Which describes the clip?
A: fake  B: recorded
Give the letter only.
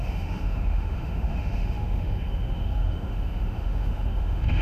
A